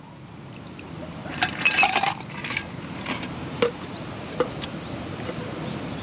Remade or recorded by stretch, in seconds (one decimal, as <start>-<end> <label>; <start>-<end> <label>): 0.0-1.2 recorded; 1.2-4.0 remade; 4.0-6.0 recorded